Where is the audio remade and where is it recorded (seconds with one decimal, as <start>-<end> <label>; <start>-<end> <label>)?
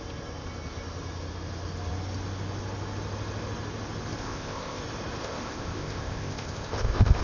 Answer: 0.0-4.2 recorded; 4.2-4.8 remade; 4.8-5.2 recorded; 5.2-7.2 remade